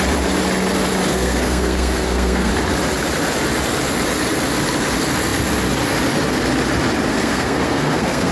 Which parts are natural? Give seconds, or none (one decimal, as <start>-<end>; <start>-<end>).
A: 0.0-1.1; 2.5-7.1